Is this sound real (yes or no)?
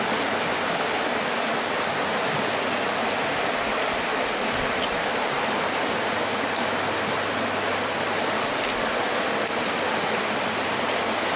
yes